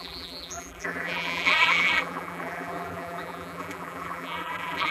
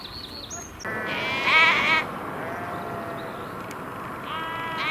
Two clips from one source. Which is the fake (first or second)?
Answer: first